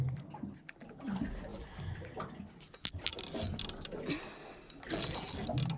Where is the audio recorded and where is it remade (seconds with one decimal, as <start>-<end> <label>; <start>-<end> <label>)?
0.0-5.8 recorded

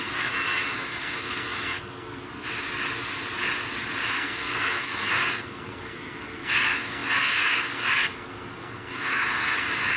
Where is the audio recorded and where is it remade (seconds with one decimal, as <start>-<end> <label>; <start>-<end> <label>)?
0.0-2.3 remade; 2.3-4.1 recorded; 4.1-10.0 remade

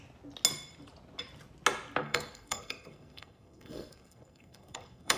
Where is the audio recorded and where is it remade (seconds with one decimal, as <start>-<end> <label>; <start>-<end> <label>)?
0.0-2.0 recorded; 2.0-5.2 remade

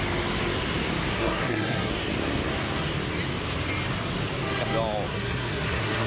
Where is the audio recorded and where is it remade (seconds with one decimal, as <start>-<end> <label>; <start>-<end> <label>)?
0.0-1.1 recorded; 1.1-1.9 remade; 1.9-5.1 recorded; 5.1-6.1 remade

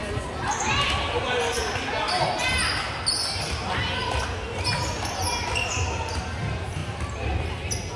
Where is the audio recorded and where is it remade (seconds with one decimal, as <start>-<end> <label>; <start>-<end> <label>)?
0.0-8.0 recorded

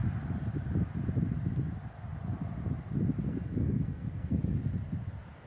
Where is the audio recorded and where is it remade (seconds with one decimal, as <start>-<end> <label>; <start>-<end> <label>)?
0.0-3.3 recorded; 3.3-4.4 remade; 4.4-5.5 recorded